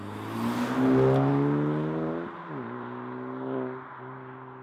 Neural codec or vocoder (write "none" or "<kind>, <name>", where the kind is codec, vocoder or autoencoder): none